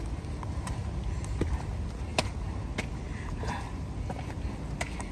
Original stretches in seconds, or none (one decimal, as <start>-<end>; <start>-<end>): 0.0-5.1